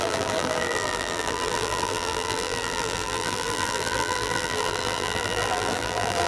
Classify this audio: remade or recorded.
remade